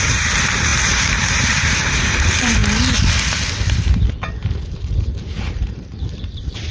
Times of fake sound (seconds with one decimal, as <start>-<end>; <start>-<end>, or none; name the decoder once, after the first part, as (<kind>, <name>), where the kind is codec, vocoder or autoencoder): 0.0-2.6 (vocoder, BigVGAN v2); 4.3-6.7